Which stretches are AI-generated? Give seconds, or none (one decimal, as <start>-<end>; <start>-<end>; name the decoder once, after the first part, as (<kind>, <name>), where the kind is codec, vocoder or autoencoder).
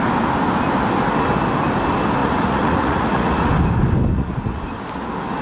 2.2-3.5 (vocoder, Vocos); 4.1-4.6